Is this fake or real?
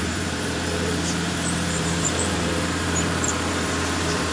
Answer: fake